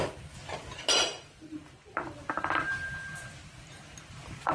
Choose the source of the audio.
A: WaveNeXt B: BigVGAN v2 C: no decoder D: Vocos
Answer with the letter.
C